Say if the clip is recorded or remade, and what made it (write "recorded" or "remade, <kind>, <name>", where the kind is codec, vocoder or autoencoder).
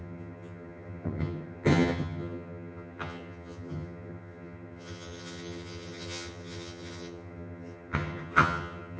remade, vocoder, HiFi-GAN